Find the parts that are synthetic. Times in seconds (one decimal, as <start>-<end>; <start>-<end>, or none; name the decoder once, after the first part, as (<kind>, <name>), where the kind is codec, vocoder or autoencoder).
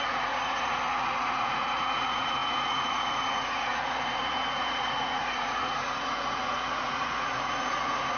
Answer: 0.0-8.2 (vocoder, Vocos)